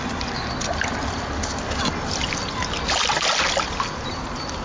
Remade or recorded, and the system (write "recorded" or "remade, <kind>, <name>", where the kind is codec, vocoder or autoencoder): recorded